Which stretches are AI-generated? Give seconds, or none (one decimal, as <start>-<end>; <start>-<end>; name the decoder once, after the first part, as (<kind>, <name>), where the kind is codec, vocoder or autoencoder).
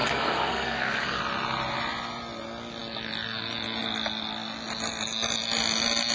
0.0-1.2 (codec, SNAC)